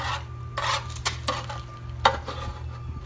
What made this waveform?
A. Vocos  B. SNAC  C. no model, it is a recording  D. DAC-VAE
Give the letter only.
C